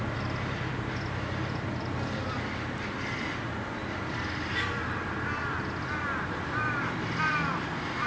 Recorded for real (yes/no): no